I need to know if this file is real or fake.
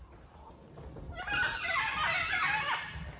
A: real